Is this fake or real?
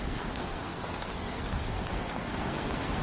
fake